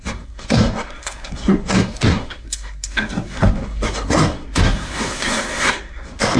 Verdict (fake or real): fake